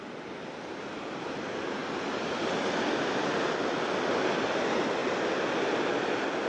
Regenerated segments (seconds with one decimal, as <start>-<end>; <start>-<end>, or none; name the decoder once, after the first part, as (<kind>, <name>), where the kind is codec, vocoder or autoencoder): none